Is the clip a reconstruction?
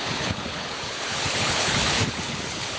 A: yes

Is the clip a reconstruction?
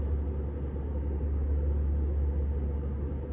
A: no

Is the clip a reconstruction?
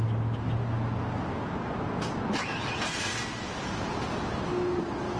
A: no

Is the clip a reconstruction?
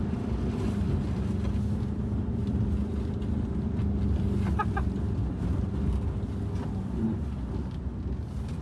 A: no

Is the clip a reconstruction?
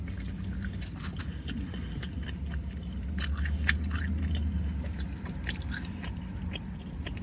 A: no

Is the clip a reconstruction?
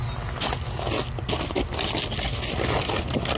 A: no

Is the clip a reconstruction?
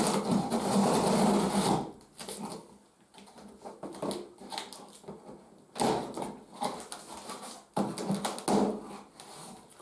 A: no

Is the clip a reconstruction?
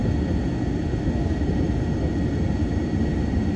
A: no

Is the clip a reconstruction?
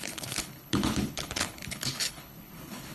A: yes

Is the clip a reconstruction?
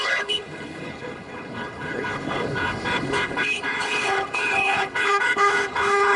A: yes